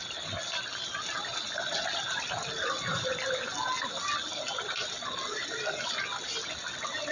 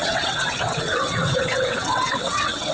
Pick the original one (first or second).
first